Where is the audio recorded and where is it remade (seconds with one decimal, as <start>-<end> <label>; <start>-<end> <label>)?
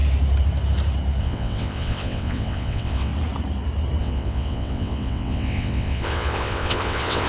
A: 0.0-1.2 recorded; 1.2-3.1 remade; 3.1-4.0 recorded; 4.0-7.3 remade